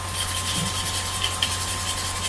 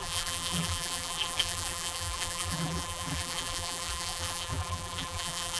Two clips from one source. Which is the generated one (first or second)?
second